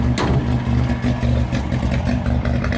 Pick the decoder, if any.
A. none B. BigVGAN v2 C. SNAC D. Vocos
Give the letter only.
A